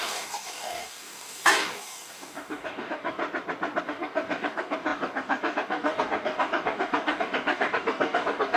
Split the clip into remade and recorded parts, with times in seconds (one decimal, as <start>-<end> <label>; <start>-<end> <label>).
0.0-3.2 remade; 3.2-3.8 recorded; 3.8-8.6 remade